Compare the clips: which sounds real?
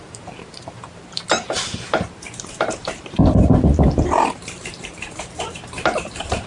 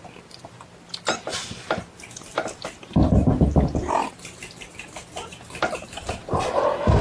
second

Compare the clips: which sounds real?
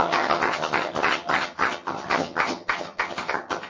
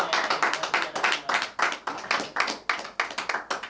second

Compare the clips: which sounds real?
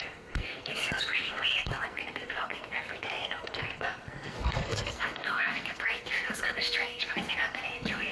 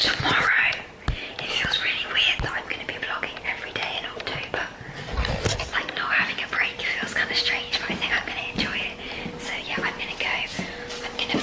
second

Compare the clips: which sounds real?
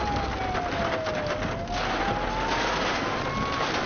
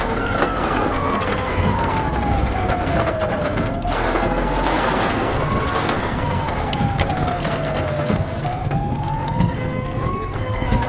first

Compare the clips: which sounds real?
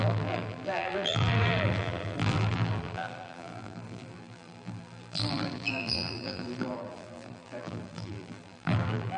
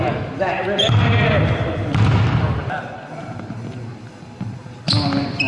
second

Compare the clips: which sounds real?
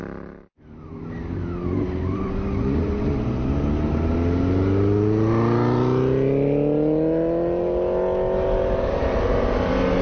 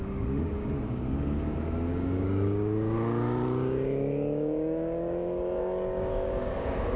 first